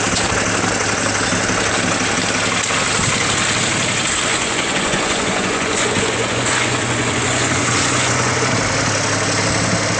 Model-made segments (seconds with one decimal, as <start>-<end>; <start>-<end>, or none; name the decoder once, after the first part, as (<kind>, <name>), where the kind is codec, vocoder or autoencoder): 4.3-8.5 (vocoder, Vocos)

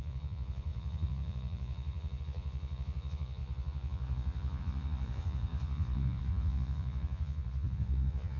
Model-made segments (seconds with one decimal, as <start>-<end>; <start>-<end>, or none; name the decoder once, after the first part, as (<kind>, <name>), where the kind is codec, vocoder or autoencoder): 0.0-8.4 (vocoder, Vocos)

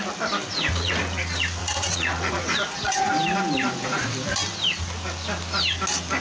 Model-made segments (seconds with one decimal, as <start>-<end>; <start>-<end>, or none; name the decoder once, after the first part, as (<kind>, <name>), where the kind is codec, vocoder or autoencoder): 0.5-1.0 (vocoder, Vocos); 1.6-3.1; 3.6-4.1

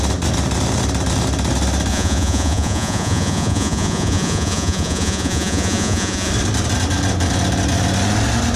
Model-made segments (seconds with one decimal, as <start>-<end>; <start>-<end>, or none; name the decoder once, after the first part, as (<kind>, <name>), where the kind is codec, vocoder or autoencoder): 1.9-6.3 (vocoder, Vocos)

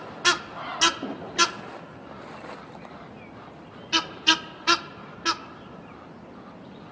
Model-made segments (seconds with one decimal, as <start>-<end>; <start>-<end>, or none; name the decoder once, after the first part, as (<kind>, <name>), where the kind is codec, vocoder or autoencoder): none

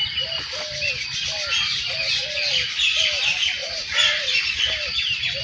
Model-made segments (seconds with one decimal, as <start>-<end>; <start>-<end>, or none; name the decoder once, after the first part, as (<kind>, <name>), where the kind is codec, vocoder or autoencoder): 3.6-4.4 (vocoder, Vocos)

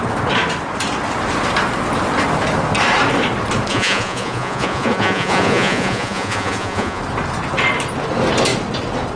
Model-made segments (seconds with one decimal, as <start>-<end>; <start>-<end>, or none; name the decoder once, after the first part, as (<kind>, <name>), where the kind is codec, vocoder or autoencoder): 3.7-7.0 (vocoder, Vocos)